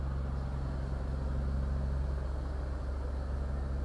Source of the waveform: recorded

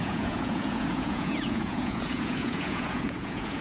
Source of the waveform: remade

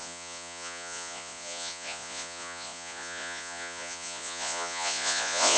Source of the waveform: remade